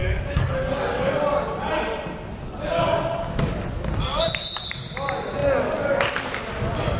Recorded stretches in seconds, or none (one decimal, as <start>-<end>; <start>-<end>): 1.1-7.0